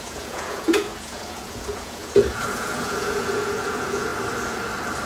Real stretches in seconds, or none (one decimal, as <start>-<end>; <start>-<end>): 4.1-5.1